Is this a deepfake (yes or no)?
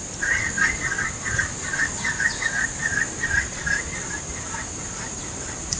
no